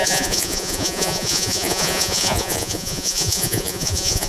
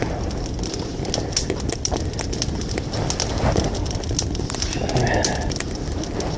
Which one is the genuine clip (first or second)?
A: second